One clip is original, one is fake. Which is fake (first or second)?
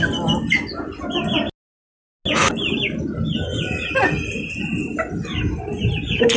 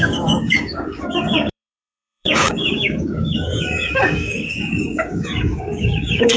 second